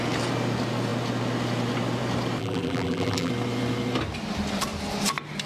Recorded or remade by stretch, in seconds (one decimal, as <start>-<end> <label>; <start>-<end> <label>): 0.0-2.4 recorded; 2.4-3.3 remade; 3.3-5.5 recorded